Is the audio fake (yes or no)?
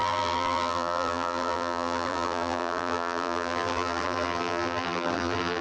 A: yes